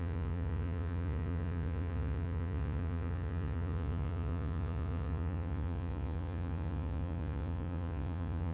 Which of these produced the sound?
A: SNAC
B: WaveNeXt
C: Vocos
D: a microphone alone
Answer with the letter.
C